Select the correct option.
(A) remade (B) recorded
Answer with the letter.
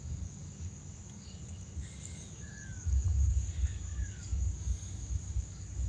A